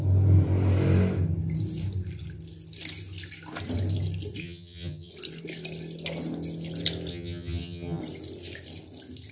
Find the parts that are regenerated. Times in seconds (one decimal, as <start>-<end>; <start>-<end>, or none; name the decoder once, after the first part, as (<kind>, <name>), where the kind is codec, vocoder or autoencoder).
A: 4.4-5.1 (vocoder, HiFi-GAN); 7.1-8.0